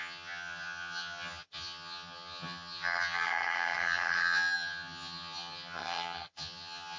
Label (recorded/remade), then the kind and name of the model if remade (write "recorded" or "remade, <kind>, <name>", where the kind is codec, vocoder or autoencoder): remade, vocoder, HiFi-GAN